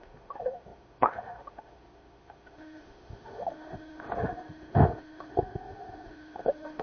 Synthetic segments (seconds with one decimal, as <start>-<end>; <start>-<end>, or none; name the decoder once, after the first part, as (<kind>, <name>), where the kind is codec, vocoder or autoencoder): 0.0-6.8 (autoencoder, DAC-VAE)